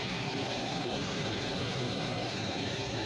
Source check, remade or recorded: remade